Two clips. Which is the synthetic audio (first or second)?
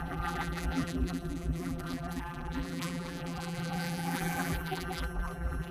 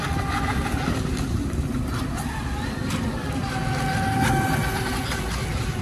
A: first